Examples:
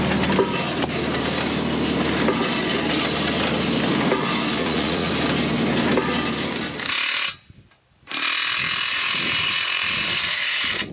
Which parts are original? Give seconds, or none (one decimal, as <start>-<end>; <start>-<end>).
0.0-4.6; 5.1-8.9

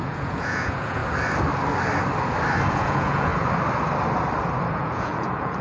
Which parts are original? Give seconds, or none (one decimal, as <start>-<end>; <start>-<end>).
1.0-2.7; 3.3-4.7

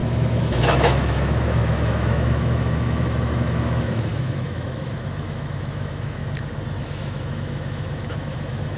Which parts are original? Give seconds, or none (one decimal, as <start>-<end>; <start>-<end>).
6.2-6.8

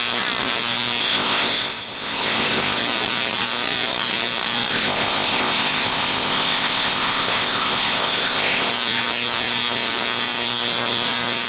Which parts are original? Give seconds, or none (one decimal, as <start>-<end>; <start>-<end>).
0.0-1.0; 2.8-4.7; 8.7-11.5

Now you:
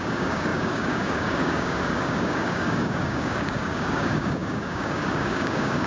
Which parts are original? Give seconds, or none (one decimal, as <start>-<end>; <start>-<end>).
none

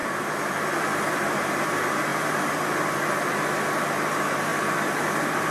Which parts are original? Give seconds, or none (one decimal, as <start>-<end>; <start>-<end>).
0.0-5.5

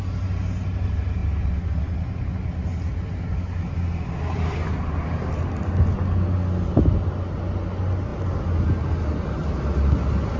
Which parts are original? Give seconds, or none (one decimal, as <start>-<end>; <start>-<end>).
0.0-10.4